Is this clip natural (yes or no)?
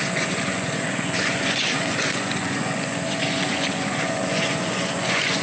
no